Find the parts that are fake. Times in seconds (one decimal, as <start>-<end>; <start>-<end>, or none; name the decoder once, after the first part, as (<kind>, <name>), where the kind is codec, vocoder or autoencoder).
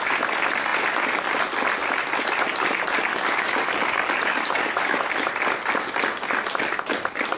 3.1-5.0 (codec, DAC)